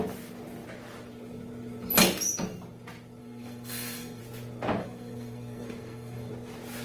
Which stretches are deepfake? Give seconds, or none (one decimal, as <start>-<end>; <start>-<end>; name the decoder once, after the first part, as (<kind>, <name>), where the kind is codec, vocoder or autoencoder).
3.2-4.2 (codec, SNAC); 4.8-6.3